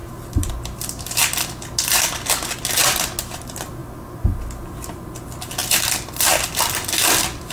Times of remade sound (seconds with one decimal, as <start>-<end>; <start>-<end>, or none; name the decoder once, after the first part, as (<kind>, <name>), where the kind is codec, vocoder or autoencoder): 0.0-0.5 (vocoder, BigVGAN v2); 5.6-6.6